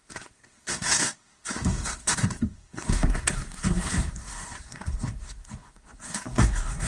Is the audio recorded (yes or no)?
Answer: no